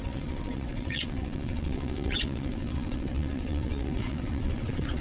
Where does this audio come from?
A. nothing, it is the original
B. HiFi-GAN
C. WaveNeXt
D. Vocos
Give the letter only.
C